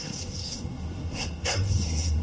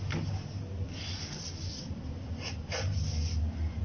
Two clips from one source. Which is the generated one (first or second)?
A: first